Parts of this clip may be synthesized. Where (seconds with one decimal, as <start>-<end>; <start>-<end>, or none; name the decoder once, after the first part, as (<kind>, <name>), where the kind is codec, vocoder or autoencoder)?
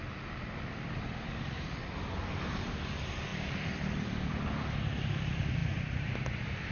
3.3-4.3 (vocoder, BigVGAN v2); 5.6-6.7